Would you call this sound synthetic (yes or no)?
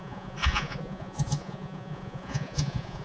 yes